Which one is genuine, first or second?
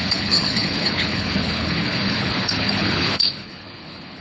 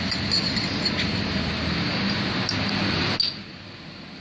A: second